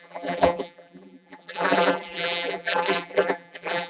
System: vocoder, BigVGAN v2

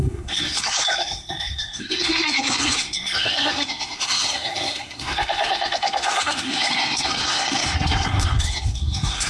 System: codec, SNAC